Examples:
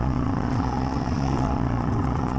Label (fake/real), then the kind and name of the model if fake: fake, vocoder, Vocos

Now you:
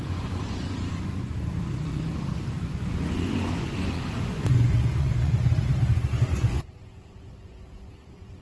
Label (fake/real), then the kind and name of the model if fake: fake, vocoder, Vocos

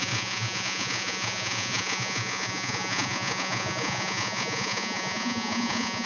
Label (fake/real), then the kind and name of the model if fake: fake, vocoder, Vocos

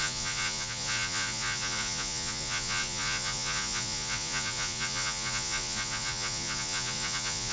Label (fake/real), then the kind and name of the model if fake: fake, vocoder, Vocos